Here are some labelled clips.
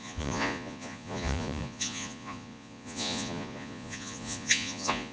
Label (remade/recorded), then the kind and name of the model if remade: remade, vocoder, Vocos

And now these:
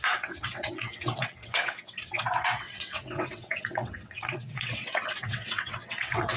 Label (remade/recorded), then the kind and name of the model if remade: remade, vocoder, WaveNeXt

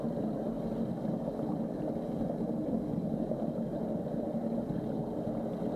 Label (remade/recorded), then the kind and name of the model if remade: recorded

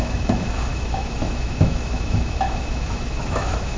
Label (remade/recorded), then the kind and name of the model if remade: remade, autoencoder, DAC-VAE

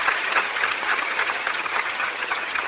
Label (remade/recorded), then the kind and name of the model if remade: remade, vocoder, HiFi-GAN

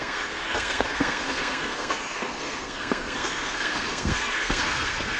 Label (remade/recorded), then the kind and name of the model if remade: remade, codec, SNAC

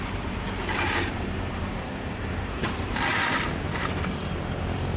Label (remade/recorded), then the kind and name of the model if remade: remade, vocoder, BigVGAN v2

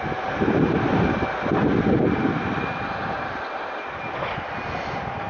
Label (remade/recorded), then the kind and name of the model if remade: recorded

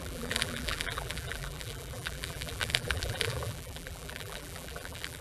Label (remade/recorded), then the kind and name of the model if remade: remade, vocoder, BigVGAN v2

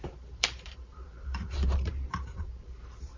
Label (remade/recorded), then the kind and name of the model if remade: remade, vocoder, BigVGAN v2